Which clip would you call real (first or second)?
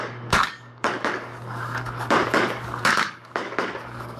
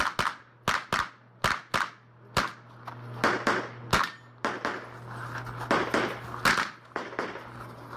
second